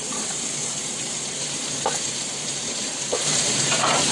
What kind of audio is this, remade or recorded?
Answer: remade